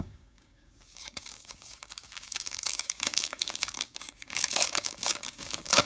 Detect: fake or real fake